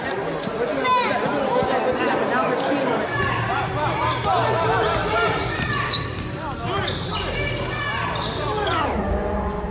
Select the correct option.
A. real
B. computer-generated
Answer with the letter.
A